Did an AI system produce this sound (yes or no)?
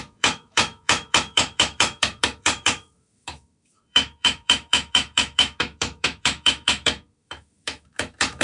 yes